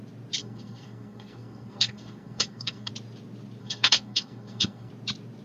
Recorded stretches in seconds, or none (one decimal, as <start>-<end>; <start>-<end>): 0.0-0.4; 2.9-3.6; 4.9-5.4